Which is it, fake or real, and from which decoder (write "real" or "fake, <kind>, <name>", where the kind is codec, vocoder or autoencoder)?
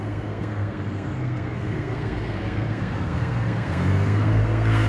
fake, codec, SNAC